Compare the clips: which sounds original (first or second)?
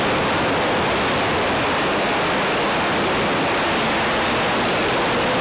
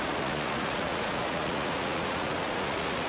first